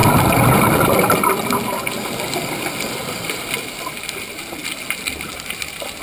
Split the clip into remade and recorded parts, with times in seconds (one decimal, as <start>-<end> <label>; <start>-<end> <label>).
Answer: 0.0-2.6 recorded; 2.6-4.6 remade; 4.6-5.3 recorded; 5.3-6.0 remade